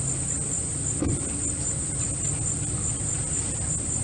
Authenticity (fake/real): real